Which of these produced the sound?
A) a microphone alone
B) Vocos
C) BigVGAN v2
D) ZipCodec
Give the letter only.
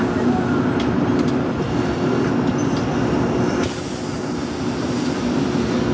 A